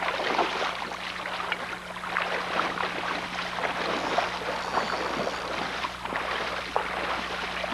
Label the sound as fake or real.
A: real